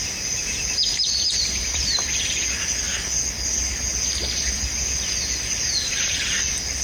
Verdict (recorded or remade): recorded